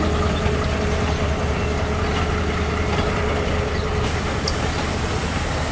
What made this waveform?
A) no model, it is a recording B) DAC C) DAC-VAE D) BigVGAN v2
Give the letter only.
A